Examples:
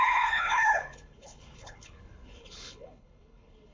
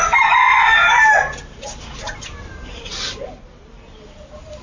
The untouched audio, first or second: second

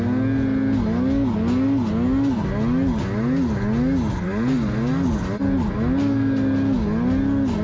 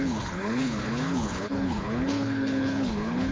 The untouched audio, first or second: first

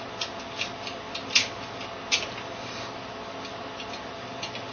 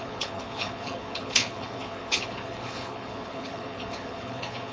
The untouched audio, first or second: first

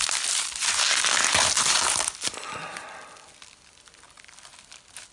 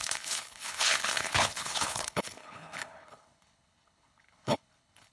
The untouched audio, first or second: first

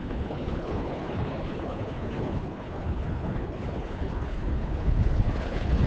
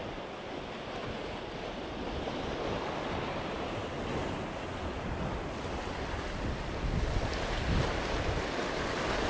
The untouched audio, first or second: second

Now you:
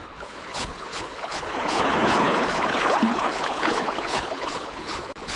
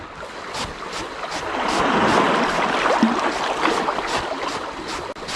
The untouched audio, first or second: second